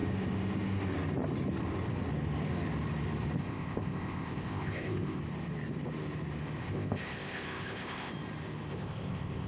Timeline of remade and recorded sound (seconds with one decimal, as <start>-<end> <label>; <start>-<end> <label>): 0.0-3.4 recorded; 3.4-5.2 remade; 5.2-6.6 recorded; 6.6-8.1 remade; 8.1-8.7 recorded; 8.7-9.5 remade